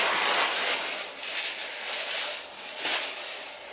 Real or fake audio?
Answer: real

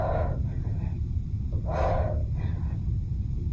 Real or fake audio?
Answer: real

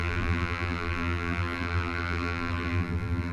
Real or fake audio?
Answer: fake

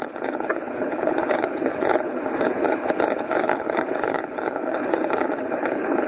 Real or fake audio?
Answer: fake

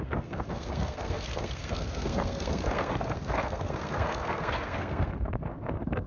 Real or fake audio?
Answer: fake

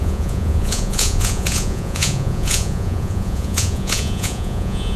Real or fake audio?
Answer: fake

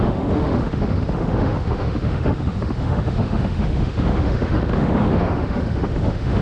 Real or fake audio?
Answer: fake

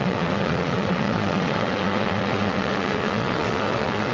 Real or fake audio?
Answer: fake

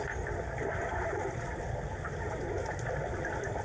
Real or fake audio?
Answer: real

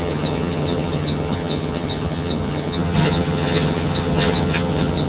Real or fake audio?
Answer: fake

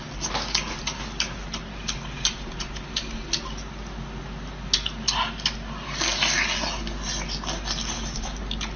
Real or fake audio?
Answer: real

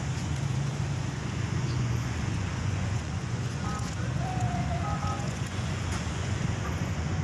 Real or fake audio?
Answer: fake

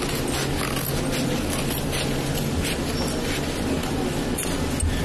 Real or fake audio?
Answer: real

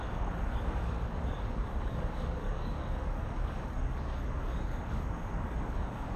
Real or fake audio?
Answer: fake